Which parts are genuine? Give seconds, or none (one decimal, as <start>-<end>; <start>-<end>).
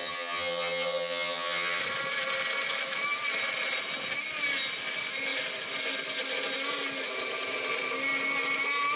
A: 1.8-9.0